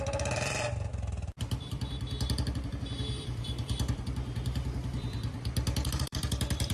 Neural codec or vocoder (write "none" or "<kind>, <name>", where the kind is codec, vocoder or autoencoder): vocoder, BigVGAN v2